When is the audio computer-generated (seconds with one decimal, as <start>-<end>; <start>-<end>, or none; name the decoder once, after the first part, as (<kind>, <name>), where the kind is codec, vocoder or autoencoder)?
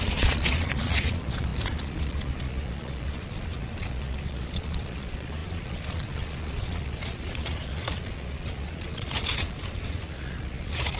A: 0.0-11.0 (vocoder, Vocos)